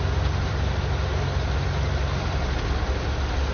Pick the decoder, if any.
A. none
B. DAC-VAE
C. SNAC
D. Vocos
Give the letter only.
A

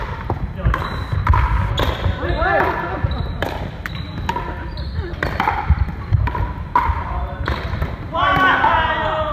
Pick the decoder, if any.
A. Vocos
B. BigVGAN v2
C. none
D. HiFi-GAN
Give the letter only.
C